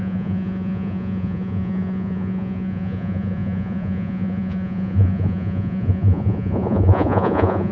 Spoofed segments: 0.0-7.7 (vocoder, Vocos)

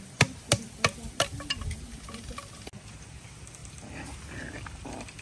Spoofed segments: none

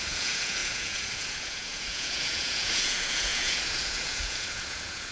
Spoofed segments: 0.0-5.1 (vocoder, Vocos)

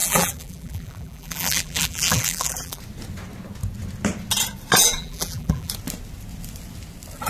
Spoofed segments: 0.0-2.8 (vocoder, BigVGAN v2); 4.8-5.7

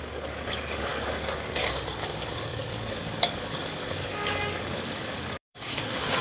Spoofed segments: 0.0-6.2 (codec, DAC)